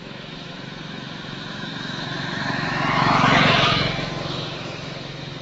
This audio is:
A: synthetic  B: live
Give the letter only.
A